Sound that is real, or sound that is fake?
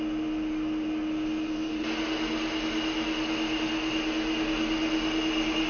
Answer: real